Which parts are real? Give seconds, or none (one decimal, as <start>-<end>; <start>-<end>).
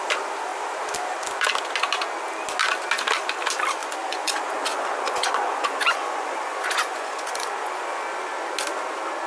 0.0-3.8; 8.0-9.3